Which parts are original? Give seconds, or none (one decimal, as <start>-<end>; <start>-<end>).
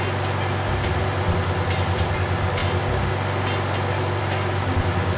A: 0.0-5.2